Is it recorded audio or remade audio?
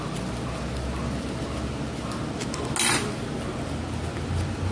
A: recorded